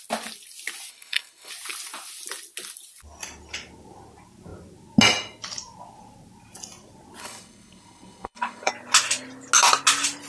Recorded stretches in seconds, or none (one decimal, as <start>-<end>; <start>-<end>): 0.0-0.9; 1.5-7.2; 8.7-10.3